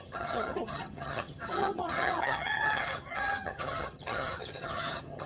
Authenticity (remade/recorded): remade